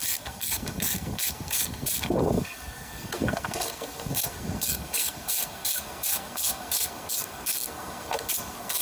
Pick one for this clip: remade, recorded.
remade